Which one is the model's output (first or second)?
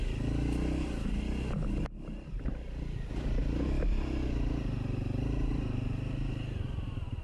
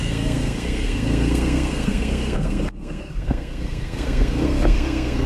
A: second